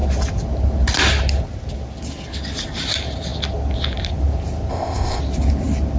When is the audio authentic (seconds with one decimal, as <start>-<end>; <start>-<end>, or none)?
0.0-4.7; 5.2-6.0